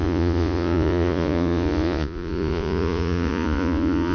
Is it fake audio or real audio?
fake